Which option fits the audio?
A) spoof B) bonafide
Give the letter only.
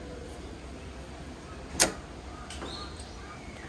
B